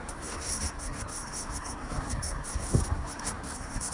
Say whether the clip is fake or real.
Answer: fake